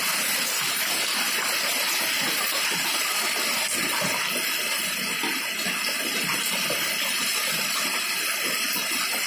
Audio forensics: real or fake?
real